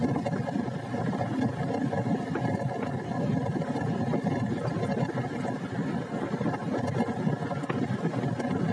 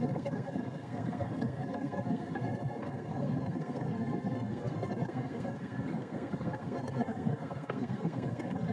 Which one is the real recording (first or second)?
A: first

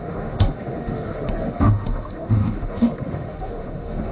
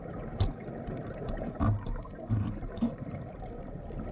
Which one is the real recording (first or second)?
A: second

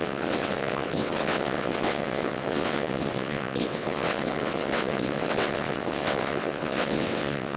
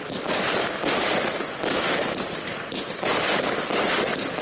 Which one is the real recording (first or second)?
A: second